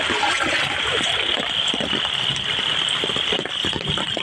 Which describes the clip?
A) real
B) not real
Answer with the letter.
A